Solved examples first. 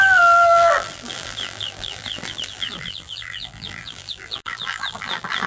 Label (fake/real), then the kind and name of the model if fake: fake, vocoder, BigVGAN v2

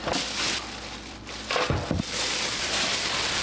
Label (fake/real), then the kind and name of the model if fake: real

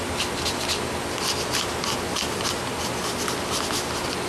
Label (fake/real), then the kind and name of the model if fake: real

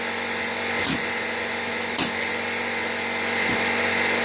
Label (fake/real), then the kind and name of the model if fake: real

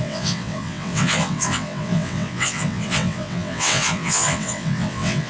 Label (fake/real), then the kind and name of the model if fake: fake, vocoder, WaveNeXt